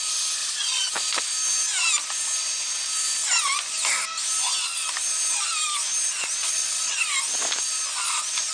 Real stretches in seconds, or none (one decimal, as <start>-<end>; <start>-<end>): 0.0-0.4; 0.9-6.4; 7.0-8.5